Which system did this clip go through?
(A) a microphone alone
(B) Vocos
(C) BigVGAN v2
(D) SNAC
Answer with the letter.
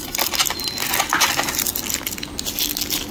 A